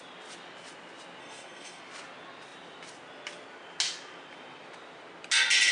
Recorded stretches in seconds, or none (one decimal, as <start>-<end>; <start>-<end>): 0.0-1.2; 1.8-5.7